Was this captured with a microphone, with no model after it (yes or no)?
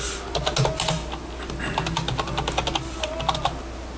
yes